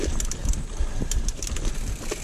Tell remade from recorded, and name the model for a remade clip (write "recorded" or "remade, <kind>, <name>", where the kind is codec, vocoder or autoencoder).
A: recorded